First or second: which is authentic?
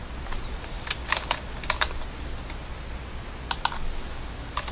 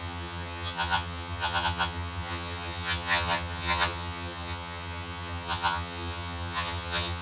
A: first